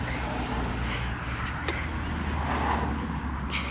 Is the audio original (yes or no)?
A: yes